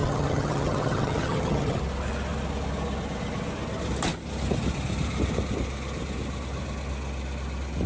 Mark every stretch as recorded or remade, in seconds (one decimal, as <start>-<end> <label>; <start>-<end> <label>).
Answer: 0.0-1.8 remade; 1.8-7.9 recorded